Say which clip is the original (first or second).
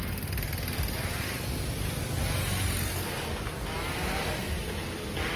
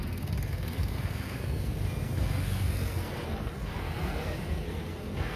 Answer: first